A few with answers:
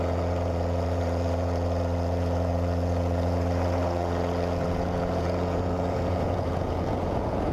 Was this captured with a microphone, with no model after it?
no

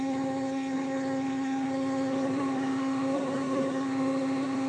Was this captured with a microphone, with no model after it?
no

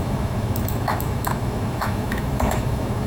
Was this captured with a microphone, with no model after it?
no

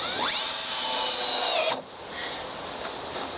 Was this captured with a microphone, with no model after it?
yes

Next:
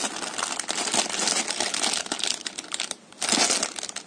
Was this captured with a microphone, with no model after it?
yes